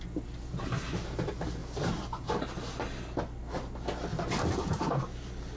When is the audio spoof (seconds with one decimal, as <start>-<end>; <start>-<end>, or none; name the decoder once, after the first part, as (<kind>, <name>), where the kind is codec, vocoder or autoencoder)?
1.6-2.3 (vocoder, BigVGAN v2); 4.1-5.0